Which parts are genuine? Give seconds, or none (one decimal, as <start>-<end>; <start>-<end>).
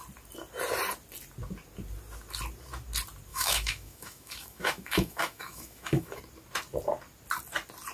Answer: 0.0-3.3; 6.2-7.9